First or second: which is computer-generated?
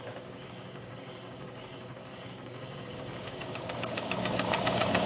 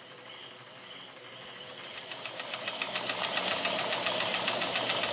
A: first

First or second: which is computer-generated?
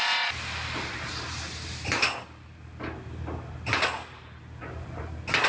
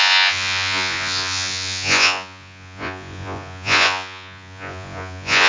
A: second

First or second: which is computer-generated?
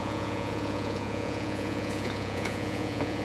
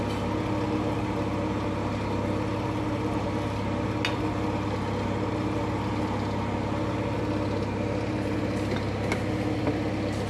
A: first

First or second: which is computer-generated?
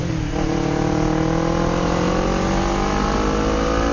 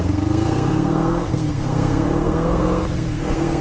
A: second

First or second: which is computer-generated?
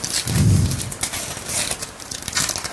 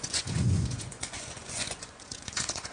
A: second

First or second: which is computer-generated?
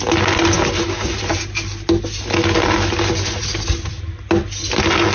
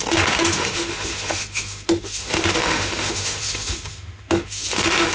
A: second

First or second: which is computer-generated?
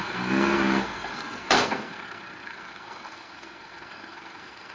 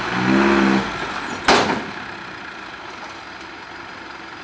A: first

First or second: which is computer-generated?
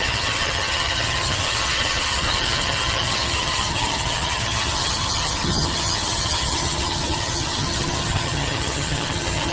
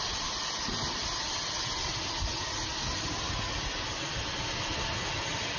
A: first